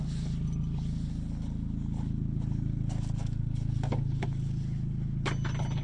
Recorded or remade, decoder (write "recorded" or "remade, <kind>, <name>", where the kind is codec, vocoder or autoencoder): recorded